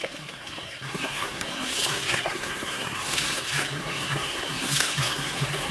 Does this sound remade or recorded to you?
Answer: remade